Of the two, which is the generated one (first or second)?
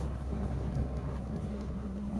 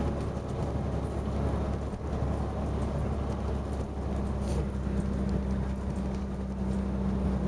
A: first